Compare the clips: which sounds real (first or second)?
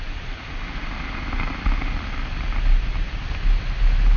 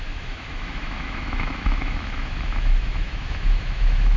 first